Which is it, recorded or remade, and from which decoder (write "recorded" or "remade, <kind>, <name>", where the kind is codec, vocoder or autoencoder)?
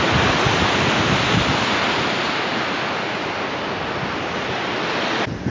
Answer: recorded